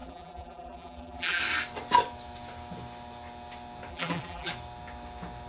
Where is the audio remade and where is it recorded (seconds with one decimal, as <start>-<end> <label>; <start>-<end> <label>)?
0.0-1.4 remade; 1.4-3.9 recorded; 3.9-4.5 remade; 4.5-5.5 recorded